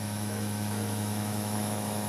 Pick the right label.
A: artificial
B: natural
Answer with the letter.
A